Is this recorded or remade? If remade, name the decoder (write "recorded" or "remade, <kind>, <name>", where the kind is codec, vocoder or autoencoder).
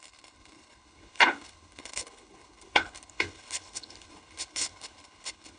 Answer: remade, codec, HILCodec